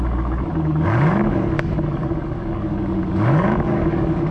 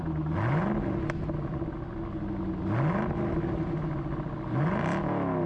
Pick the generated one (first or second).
first